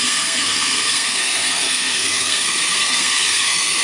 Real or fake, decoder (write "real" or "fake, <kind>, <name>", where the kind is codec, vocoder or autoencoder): fake, codec, SNAC